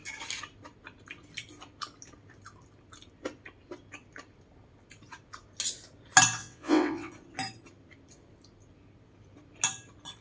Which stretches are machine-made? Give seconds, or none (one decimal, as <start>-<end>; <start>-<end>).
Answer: 6.4-7.1